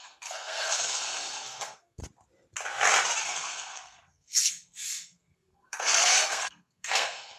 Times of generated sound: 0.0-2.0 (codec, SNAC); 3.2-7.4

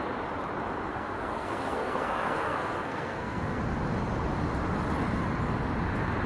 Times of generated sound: 0.9-3.6 (codec, SNAC)

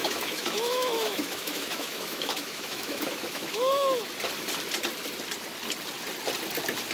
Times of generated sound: 0.0-4.1 (autoencoder, DAC-VAE)

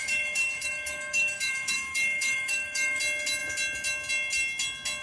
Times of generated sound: 0.0-3.0 (autoencoder, DAC-VAE)

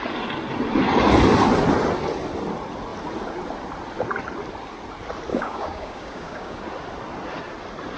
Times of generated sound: 5.3-6.6 (codec, DAC)

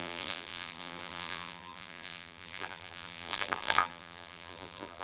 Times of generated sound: 0.0-5.0 (vocoder, BigVGAN v2)

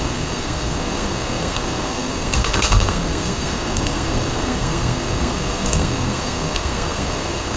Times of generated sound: 0.0-7.6 (codec, SNAC)